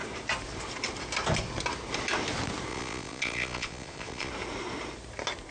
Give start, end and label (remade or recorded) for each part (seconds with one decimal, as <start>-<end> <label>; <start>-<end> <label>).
0.0-2.7 recorded; 2.7-4.3 remade; 4.3-5.5 recorded